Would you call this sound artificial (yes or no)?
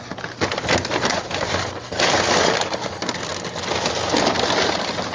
no